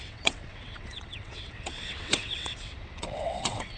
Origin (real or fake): fake